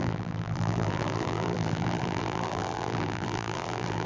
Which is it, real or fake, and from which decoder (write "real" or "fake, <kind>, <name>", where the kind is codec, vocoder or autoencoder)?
fake, vocoder, BigVGAN v2